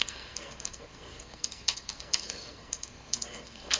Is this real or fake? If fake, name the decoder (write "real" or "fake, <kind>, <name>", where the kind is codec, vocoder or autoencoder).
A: fake, codec, SNAC